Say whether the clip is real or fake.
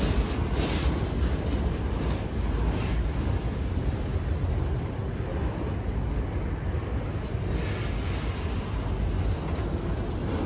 real